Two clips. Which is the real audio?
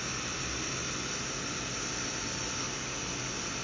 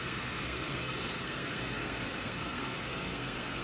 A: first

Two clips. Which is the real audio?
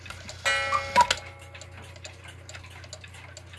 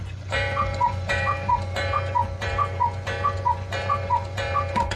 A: first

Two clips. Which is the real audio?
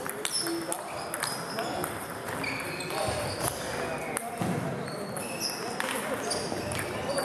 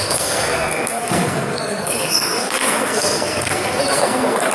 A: first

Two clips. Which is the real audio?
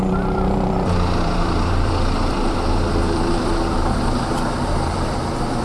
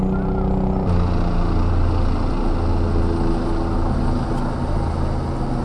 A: second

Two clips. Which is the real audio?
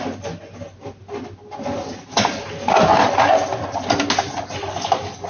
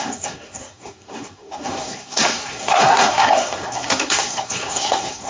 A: first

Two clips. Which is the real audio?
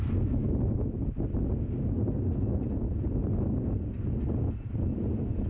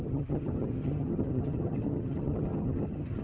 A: first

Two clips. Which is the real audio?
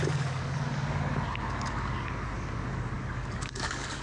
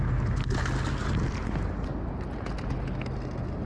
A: second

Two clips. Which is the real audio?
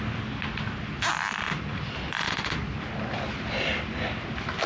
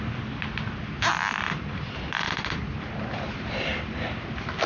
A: first